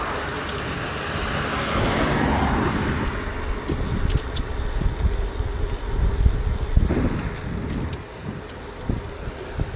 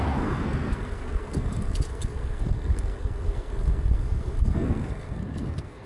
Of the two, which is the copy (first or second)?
second